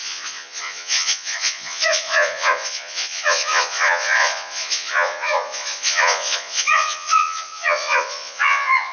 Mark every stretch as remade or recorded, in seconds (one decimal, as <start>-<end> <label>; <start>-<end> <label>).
0.0-8.9 remade

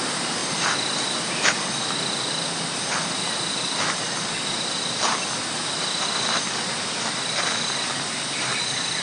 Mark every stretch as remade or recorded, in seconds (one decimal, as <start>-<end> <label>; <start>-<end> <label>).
0.0-9.0 recorded